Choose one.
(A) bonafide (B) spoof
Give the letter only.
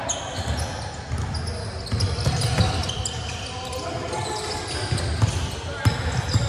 A